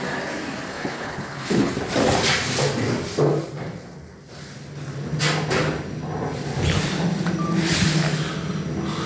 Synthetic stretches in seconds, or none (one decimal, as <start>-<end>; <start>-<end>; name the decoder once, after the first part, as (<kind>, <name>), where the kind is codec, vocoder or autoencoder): 0.7-1.7 (codec, HILCodec)